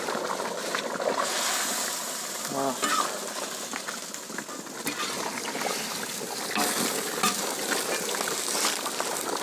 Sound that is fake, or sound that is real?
real